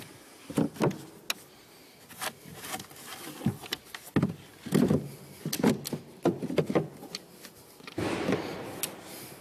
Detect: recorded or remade recorded